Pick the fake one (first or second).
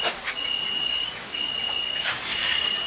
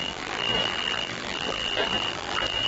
second